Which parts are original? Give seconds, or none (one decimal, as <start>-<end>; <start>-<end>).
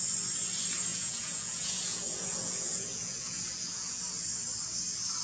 0.0-0.9; 4.0-5.2